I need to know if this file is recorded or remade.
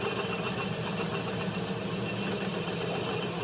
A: recorded